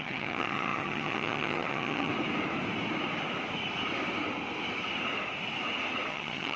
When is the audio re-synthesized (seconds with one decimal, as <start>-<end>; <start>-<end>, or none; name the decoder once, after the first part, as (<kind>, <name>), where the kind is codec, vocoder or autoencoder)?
0.0-2.1 (vocoder, HiFi-GAN); 6.1-6.6